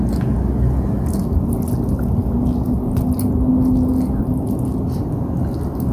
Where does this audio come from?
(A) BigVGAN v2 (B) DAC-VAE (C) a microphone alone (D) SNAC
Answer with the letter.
C